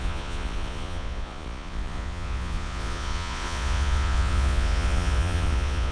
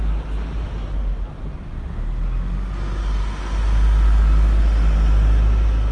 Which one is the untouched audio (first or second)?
second